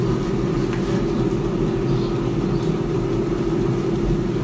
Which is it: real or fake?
real